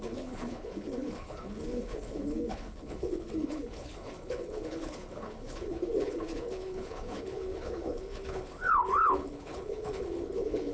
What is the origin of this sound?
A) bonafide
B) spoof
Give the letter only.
B